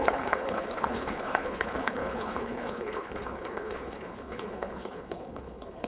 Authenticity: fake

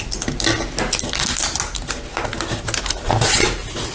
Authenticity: real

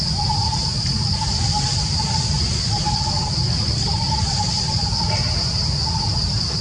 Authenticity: real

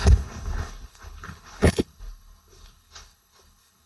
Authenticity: fake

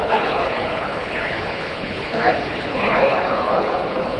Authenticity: fake